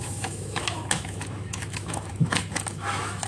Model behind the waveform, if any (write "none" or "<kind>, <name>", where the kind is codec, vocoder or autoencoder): autoencoder, DAC-VAE